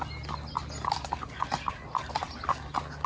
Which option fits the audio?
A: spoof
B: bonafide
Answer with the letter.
B